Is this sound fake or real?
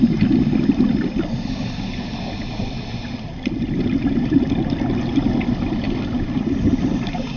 real